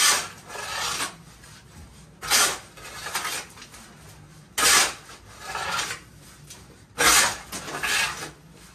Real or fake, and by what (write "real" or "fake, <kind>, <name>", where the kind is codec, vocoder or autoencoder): real